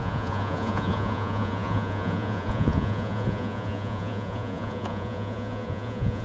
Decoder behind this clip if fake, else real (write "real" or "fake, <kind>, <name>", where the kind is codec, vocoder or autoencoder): fake, vocoder, Vocos